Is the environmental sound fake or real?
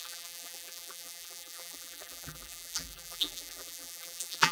fake